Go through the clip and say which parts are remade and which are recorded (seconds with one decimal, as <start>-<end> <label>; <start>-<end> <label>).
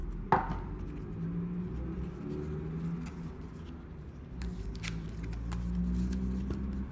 0.0-6.9 recorded